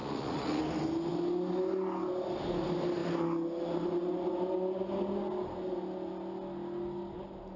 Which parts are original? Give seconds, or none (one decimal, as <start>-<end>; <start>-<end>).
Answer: 0.6-7.6